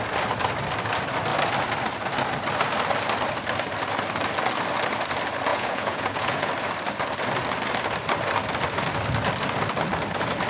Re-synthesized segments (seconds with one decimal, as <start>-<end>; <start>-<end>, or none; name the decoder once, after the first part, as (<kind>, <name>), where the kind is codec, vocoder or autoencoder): 5.5-6.5 (vocoder, Vocos)